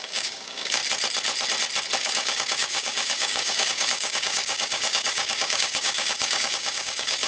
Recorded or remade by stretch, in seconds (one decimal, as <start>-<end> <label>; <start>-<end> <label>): 0.0-0.8 remade; 0.8-2.0 recorded; 2.0-7.3 remade